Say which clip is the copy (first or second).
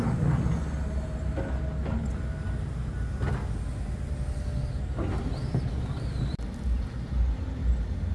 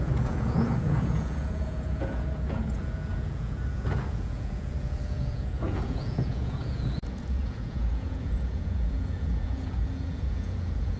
second